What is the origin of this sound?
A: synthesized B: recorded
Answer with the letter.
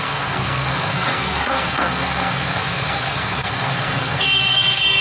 A